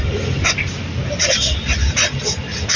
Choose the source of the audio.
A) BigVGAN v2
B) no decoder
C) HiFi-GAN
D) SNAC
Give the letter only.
B